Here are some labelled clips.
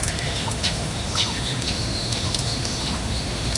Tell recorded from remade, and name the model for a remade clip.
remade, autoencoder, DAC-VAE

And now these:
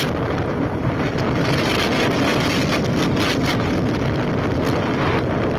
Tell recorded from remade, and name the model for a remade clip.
recorded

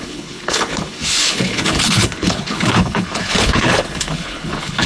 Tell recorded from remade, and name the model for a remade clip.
remade, codec, HILCodec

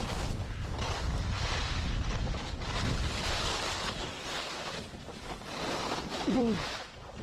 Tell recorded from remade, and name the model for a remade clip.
remade, vocoder, BigVGAN v2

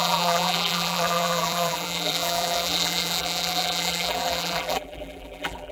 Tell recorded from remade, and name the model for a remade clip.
remade, vocoder, BigVGAN v2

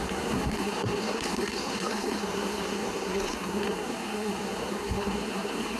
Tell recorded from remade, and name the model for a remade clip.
remade, codec, SNAC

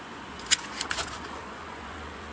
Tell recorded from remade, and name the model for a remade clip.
remade, vocoder, Vocos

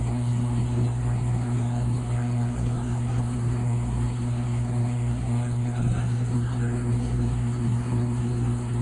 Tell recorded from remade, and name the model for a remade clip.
remade, codec, SNAC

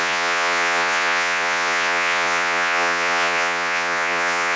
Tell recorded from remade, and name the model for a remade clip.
remade, vocoder, Vocos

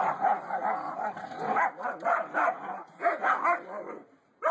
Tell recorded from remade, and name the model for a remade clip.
recorded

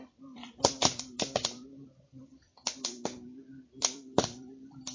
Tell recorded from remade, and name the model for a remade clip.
remade, vocoder, BigVGAN v2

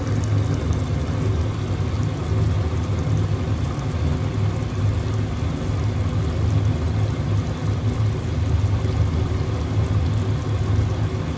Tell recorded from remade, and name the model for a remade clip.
recorded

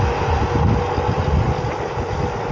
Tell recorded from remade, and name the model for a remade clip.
recorded